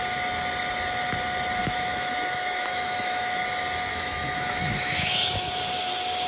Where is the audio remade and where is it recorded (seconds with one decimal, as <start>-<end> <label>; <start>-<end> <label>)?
0.0-1.6 recorded; 1.6-3.4 remade; 3.4-3.9 recorded; 3.9-5.5 remade; 5.5-6.3 recorded